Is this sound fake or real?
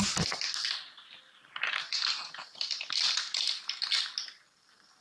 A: real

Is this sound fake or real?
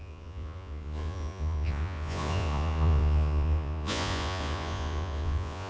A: fake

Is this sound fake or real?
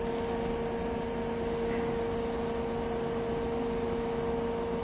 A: real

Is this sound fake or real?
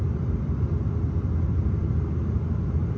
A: real